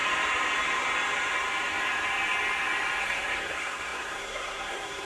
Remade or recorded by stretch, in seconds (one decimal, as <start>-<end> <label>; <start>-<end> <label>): 0.0-3.0 recorded; 3.0-5.0 remade

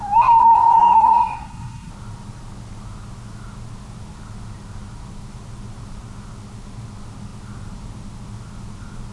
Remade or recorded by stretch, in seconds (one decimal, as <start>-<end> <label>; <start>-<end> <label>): 0.0-0.4 recorded; 0.4-1.9 remade; 1.9-9.1 recorded

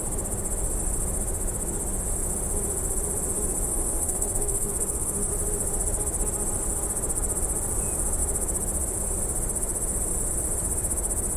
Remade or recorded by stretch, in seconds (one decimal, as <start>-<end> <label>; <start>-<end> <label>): 0.0-3.7 recorded; 3.7-5.3 remade; 5.3-11.4 recorded